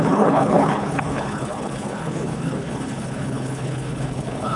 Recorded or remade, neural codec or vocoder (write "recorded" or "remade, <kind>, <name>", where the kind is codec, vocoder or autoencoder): remade, codec, HILCodec